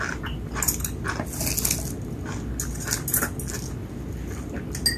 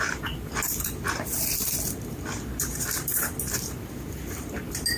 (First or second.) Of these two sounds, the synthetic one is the second